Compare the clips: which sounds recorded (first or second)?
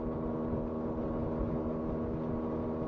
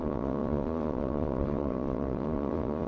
first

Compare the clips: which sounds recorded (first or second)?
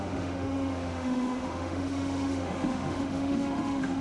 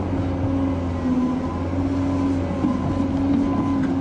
second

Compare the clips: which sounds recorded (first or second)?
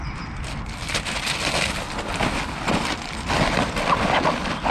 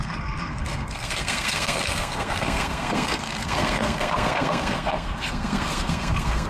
first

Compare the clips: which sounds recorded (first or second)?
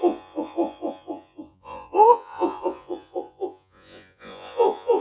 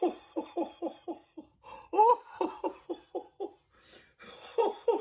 second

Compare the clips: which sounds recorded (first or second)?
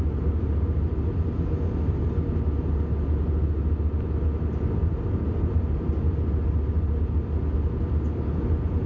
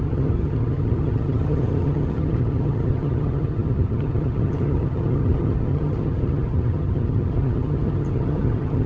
first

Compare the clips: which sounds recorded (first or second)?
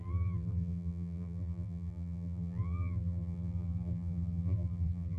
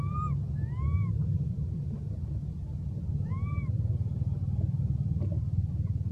second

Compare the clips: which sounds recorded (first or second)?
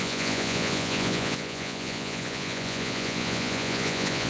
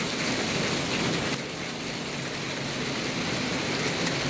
second